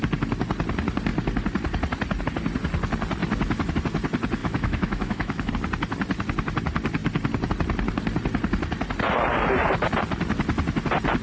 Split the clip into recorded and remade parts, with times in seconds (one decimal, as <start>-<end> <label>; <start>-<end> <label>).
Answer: 0.0-4.4 recorded; 4.4-5.5 remade; 5.5-11.2 recorded